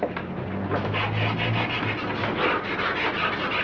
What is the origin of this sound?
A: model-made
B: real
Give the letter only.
B